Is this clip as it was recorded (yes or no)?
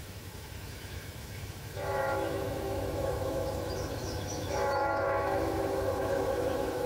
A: no